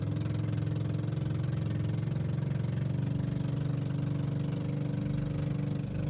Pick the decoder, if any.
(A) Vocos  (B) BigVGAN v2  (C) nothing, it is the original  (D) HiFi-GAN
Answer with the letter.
C